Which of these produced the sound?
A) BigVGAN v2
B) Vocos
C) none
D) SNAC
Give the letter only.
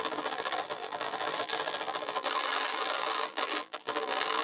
A